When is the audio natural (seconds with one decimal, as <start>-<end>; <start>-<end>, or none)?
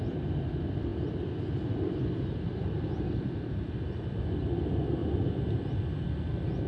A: 5.0-6.0